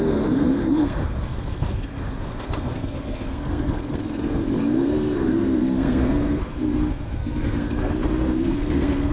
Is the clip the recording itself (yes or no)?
no